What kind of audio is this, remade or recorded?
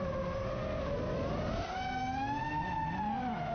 recorded